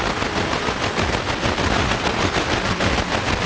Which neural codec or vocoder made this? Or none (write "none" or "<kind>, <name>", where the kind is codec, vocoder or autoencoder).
none